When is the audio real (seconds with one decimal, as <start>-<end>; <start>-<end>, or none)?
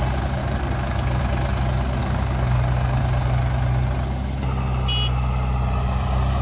0.0-0.4; 1.2-2.0; 3.0-6.4